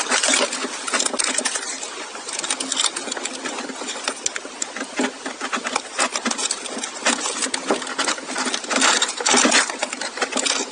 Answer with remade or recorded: recorded